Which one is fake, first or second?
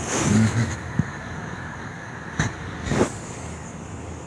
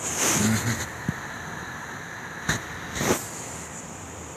first